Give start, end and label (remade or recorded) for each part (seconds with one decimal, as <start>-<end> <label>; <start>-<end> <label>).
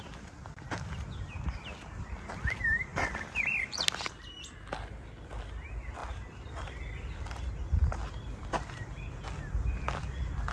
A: 0.0-2.9 recorded; 2.9-3.7 remade; 3.7-6.0 recorded; 6.0-6.5 remade; 6.5-7.8 recorded; 7.8-9.1 remade; 9.1-10.5 recorded